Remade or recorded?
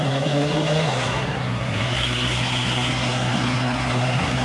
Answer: remade